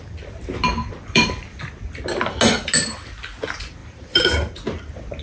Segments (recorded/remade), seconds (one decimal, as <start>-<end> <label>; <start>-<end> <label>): 0.0-0.7 recorded; 0.7-1.6 remade; 1.6-3.8 recorded; 3.8-4.8 remade; 4.8-5.2 recorded